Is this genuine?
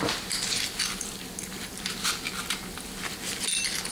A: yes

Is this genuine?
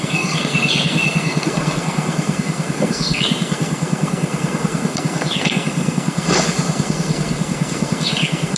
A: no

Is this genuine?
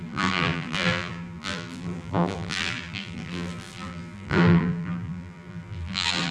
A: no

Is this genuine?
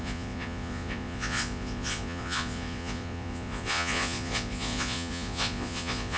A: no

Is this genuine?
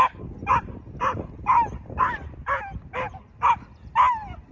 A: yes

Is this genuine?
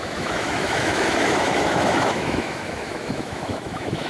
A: no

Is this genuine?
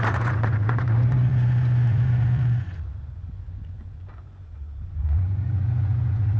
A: no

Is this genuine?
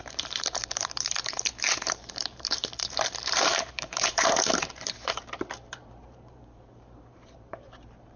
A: no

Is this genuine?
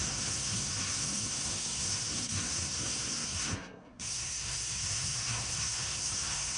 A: no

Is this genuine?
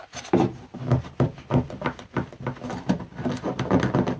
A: yes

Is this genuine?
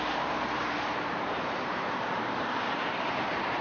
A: no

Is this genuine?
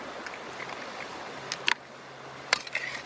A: yes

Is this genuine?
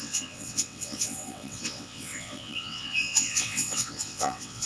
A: no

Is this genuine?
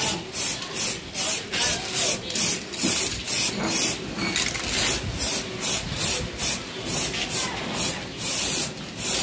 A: yes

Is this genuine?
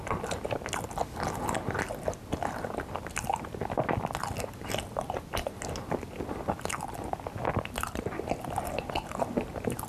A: yes